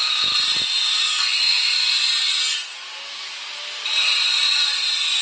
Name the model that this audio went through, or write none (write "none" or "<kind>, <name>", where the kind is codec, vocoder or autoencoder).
none